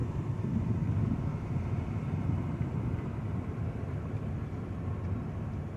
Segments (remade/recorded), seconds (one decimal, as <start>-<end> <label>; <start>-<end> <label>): 0.0-5.8 recorded